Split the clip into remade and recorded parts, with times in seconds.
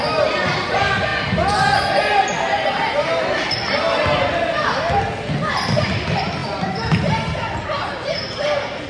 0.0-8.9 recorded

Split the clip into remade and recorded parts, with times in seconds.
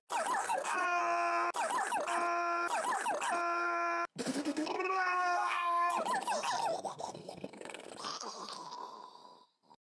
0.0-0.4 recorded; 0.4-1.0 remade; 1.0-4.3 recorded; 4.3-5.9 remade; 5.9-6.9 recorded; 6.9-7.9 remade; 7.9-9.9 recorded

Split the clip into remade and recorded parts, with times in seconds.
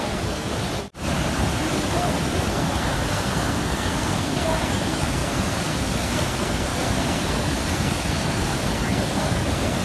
0.0-0.5 remade; 0.5-1.7 recorded; 1.7-9.8 remade